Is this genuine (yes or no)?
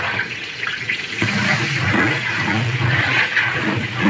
no